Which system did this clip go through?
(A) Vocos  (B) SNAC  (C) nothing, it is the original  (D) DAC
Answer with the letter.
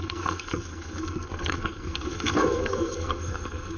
B